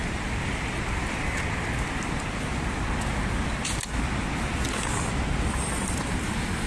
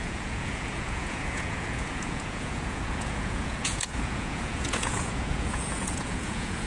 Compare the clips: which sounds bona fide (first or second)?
first